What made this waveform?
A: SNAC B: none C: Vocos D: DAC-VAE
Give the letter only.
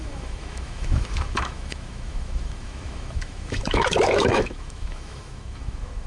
D